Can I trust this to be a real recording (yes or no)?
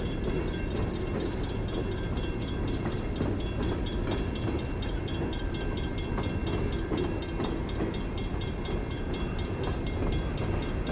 yes